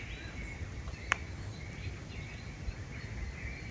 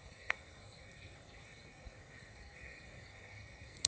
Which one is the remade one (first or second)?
second